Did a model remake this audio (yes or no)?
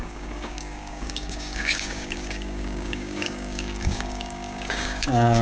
yes